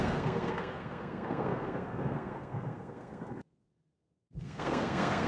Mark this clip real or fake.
fake